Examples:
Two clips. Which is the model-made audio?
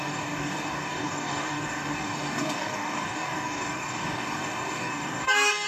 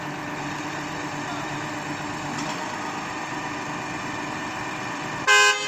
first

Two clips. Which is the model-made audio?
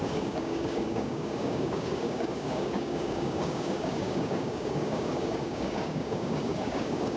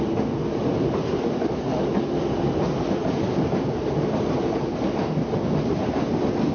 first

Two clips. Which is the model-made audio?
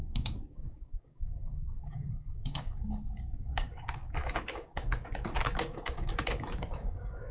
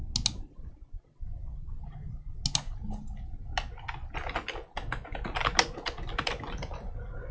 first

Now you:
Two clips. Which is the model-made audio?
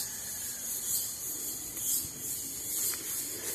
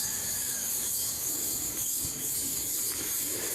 second